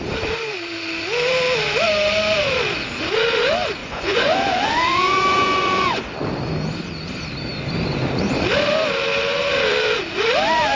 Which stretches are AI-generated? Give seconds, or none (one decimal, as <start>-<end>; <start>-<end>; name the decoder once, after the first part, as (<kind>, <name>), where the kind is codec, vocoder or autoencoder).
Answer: 3.8-6.0 (vocoder, Vocos)